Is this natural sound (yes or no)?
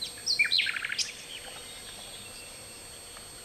yes